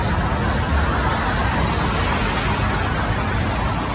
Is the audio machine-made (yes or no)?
no